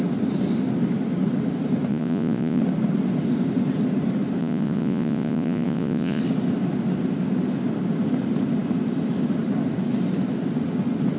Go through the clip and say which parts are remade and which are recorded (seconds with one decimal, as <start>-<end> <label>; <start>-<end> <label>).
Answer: 0.0-1.9 recorded; 1.9-2.6 remade; 2.6-4.4 recorded; 4.4-6.2 remade; 6.2-11.2 recorded